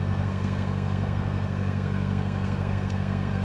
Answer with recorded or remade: remade